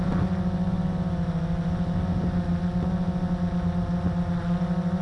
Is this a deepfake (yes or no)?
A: no